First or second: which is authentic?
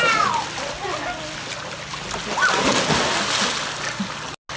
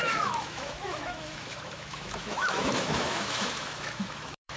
first